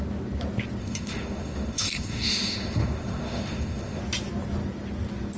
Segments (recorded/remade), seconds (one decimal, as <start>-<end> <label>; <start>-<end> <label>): 0.0-0.8 recorded; 0.8-4.0 remade; 4.0-5.4 recorded